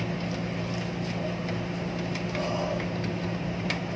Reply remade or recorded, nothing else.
recorded